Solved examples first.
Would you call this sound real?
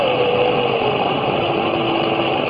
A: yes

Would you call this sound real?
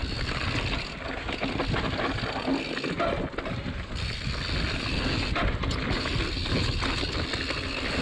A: yes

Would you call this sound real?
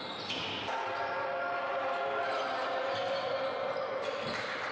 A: yes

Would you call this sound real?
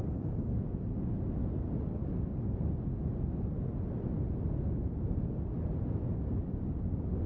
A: yes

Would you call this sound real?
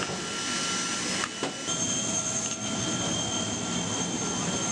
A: yes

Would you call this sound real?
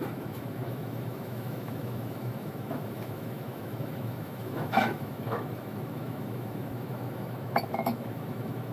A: no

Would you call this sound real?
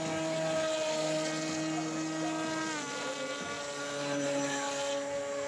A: yes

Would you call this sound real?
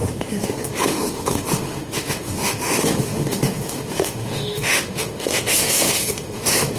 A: no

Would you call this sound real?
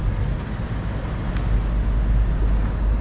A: yes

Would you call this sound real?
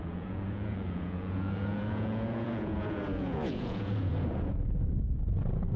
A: no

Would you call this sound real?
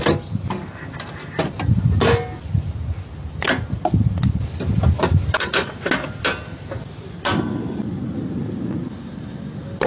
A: yes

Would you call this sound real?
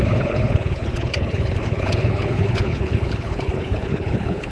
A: no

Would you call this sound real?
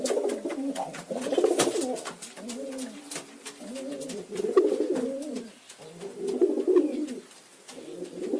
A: yes